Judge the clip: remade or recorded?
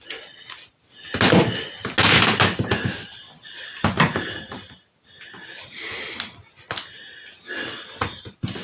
recorded